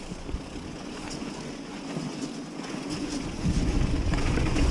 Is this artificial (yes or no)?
yes